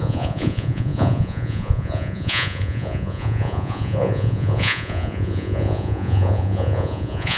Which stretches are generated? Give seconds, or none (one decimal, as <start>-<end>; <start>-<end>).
0.0-7.4